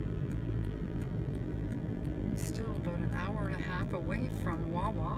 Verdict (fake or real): fake